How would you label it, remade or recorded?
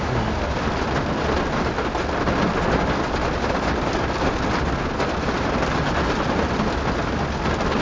recorded